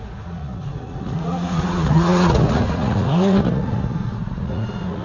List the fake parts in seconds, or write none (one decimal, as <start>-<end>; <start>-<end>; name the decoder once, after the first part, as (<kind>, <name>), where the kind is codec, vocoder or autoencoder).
0.0-5.0 (vocoder, Vocos)